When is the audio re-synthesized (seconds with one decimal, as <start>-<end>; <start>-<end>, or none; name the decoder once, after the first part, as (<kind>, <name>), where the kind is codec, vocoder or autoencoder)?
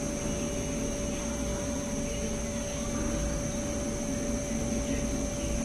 none